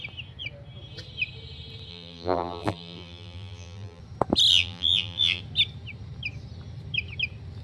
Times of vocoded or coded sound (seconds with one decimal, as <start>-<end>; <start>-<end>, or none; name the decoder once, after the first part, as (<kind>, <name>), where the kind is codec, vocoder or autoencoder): 1.9-4.0 (vocoder, BigVGAN v2); 4.5-5.4